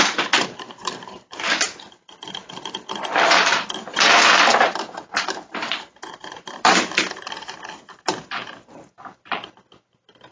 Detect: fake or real fake